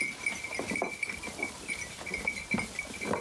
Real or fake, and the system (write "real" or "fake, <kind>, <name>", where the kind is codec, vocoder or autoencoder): real